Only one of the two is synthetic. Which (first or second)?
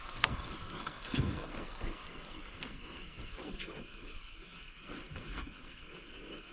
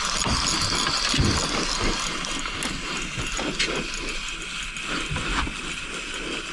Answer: first